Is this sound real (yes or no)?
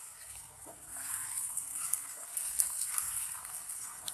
no